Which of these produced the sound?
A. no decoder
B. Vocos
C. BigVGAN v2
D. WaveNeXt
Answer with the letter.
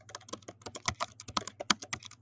A